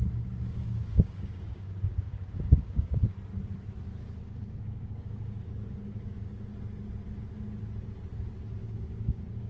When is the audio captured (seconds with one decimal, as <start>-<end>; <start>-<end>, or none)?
3.1-4.2; 6.5-8.6

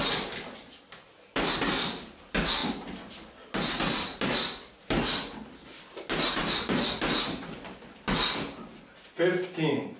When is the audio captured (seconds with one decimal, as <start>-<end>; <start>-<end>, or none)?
0.0-10.0

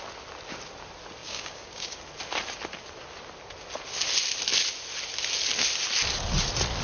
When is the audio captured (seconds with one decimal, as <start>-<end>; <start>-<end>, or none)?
0.0-1.2; 2.0-6.8

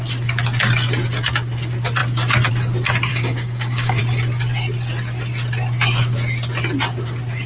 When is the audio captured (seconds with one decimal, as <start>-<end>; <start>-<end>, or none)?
0.0-3.1; 4.0-7.5

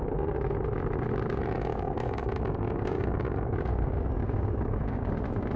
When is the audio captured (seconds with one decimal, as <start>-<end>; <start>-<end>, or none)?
0.0-1.7; 5.1-5.6

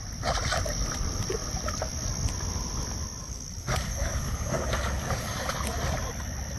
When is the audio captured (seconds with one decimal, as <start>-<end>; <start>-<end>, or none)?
0.0-3.2; 5.5-6.6

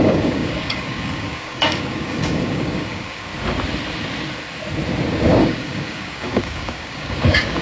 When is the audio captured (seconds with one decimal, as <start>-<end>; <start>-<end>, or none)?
3.3-5.1